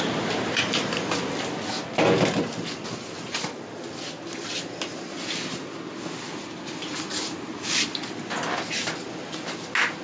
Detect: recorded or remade recorded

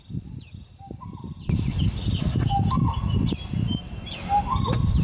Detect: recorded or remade recorded